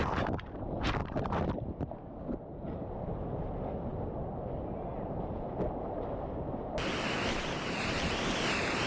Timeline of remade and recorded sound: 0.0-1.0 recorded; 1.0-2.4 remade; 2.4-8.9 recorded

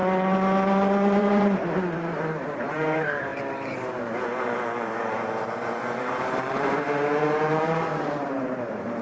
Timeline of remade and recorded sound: 0.0-1.2 recorded; 1.2-9.0 remade

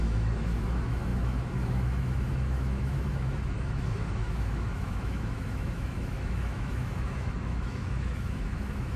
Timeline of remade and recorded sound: 0.0-9.0 remade

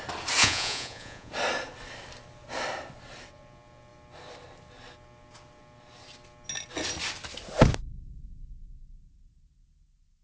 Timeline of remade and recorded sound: 0.0-0.4 recorded; 0.4-1.3 remade; 1.3-10.2 recorded

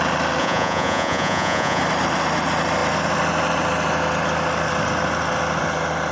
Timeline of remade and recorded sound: 0.0-0.4 recorded; 0.4-1.8 remade; 1.8-6.1 recorded

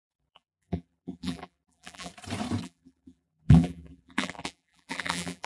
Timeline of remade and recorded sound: 0.0-2.1 remade; 2.1-2.6 recorded; 2.6-5.5 remade

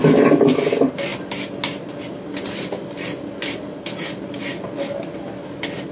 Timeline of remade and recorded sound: 0.0-5.9 recorded